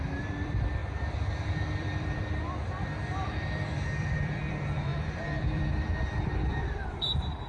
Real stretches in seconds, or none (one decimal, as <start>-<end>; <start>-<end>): none